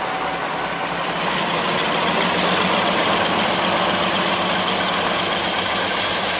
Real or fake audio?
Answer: real